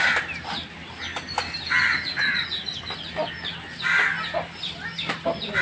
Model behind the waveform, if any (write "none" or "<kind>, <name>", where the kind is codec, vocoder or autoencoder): none